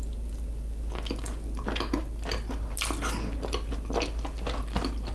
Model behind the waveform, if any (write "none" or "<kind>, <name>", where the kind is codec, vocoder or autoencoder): none